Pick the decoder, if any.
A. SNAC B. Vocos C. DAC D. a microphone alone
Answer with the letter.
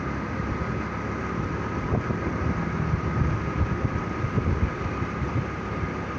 D